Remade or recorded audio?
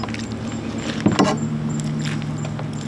recorded